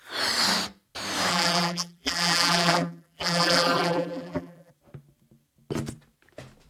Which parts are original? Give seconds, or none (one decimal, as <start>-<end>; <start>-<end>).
0.0-1.3; 4.7-6.7